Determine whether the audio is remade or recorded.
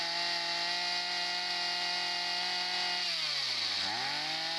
recorded